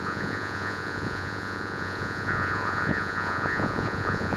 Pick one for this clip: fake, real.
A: fake